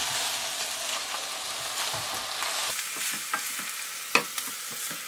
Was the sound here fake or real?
real